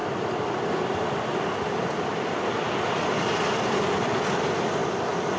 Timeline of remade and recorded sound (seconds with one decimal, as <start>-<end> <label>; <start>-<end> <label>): 0.0-5.4 recorded